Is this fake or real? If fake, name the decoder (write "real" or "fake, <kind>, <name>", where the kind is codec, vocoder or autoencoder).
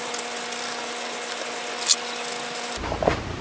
real